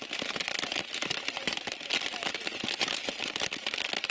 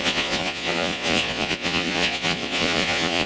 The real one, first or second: first